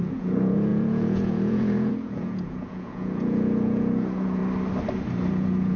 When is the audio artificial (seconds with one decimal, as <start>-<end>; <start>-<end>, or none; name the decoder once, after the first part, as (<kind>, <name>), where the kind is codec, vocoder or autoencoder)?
0.0-4.4 (vocoder, Vocos); 5.3-5.8

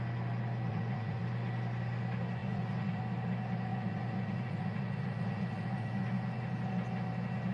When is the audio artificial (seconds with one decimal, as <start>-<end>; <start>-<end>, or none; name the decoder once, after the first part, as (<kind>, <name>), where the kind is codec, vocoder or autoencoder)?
0.7-1.2 (vocoder, Vocos); 2.4-3.0; 3.7-6.5

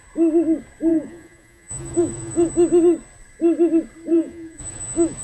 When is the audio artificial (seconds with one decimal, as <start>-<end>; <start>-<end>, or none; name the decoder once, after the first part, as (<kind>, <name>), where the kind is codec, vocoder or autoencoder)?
0.9-2.5 (vocoder, Vocos); 4.1-5.2

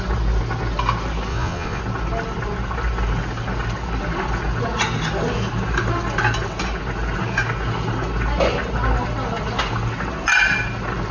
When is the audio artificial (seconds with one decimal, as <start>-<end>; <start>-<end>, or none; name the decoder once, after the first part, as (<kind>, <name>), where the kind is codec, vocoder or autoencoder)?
1.3-1.8 (vocoder, Vocos)